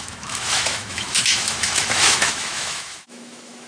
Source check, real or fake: fake